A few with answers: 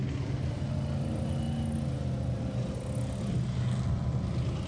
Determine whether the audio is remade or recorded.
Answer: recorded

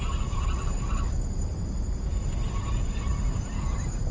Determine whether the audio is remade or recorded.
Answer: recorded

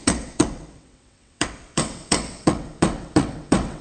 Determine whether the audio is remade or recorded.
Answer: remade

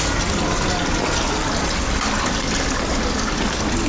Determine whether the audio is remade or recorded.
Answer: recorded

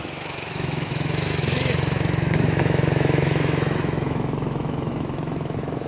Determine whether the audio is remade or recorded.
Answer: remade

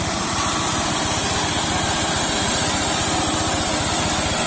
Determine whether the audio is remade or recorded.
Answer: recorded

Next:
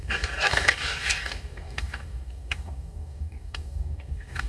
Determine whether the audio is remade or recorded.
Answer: remade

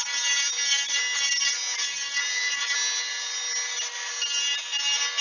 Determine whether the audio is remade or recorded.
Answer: recorded